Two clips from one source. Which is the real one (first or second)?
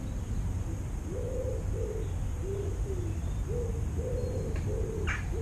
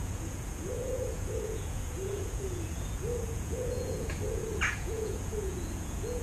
first